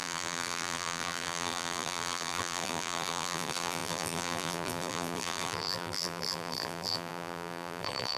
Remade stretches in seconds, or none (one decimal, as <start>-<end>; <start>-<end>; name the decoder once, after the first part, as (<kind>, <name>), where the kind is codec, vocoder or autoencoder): 0.0-8.2 (vocoder, BigVGAN v2)